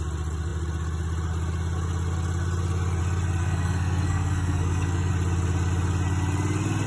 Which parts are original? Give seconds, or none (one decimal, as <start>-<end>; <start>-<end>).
0.0-3.4; 5.1-6.9